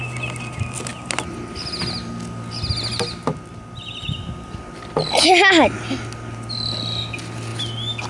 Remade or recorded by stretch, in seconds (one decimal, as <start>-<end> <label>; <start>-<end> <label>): 0.0-8.1 recorded